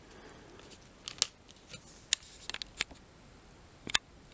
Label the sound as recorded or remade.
recorded